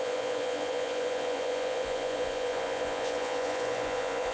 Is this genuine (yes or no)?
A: no